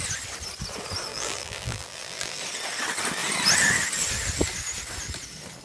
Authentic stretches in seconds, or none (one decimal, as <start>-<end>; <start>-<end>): 0.0-1.1; 2.4-5.6